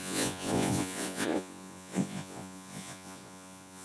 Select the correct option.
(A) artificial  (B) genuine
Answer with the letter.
A